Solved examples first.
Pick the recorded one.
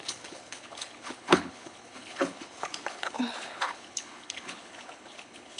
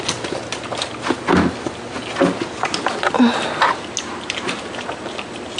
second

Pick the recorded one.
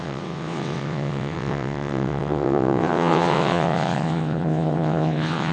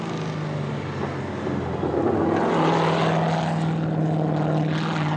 second